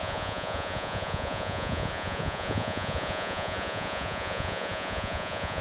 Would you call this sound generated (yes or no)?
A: yes